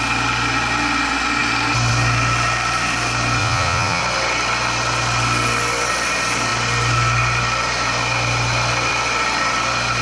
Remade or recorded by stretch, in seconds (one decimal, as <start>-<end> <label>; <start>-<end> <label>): 0.0-3.4 recorded; 3.4-4.0 remade; 4.0-10.0 recorded